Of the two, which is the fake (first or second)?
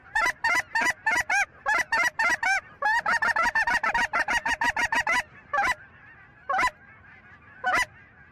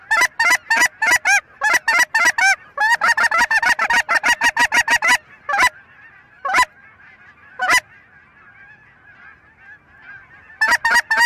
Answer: first